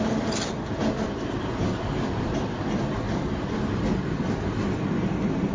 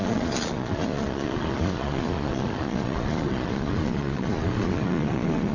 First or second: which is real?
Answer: first